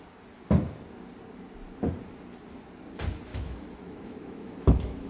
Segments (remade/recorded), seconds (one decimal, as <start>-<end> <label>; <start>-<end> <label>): 0.0-3.3 recorded; 3.3-5.1 remade